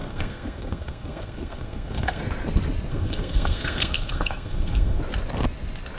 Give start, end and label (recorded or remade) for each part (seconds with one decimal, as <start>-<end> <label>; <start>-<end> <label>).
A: 0.0-2.2 remade; 2.2-2.9 recorded; 2.9-5.0 remade; 5.0-6.0 recorded